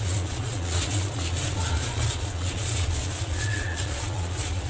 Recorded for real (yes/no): no